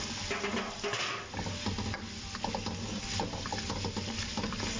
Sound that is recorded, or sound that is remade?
recorded